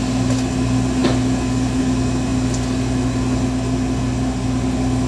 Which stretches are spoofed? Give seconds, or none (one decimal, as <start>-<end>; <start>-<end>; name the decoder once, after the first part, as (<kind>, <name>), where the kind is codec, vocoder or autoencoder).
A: none